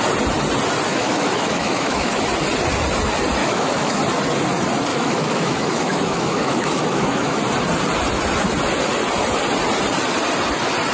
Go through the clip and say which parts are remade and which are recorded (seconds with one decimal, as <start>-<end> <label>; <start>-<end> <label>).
0.0-0.9 recorded; 0.9-2.2 remade; 2.2-3.4 recorded; 3.4-4.0 remade; 4.0-4.9 recorded; 4.9-7.4 remade; 7.4-10.9 recorded

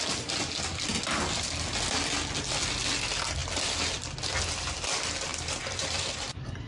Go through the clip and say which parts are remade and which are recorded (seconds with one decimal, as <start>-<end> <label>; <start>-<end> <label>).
0.0-5.3 recorded; 5.3-6.7 remade

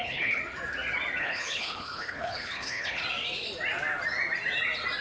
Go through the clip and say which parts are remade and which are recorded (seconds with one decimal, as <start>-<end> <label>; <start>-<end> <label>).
0.0-0.4 remade; 0.4-1.2 recorded; 1.2-3.0 remade; 3.0-5.0 recorded

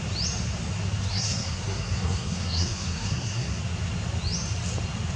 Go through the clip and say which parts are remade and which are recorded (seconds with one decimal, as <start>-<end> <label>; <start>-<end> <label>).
0.0-1.1 recorded; 1.1-3.6 remade; 3.6-5.2 recorded